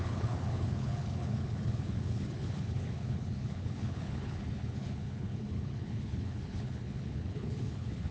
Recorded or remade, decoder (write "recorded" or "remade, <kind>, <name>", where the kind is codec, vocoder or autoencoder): remade, codec, HILCodec